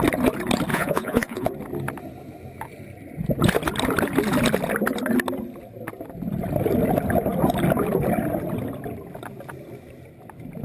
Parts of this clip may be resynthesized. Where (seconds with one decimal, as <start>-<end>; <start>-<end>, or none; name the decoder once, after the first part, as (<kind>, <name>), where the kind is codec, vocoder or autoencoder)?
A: 0.7-1.5 (vocoder, Vocos)